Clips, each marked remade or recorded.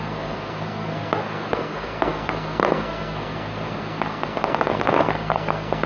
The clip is remade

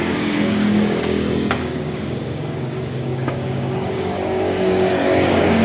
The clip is remade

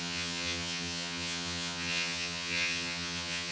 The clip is remade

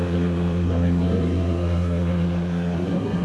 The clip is remade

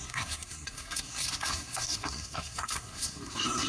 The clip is remade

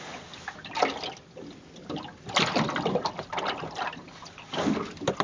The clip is recorded